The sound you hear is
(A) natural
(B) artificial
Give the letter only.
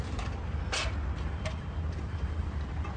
A